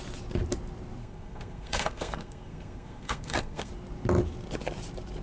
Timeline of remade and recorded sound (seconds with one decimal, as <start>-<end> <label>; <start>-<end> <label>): 0.0-1.0 recorded; 1.0-3.7 remade; 3.7-5.2 recorded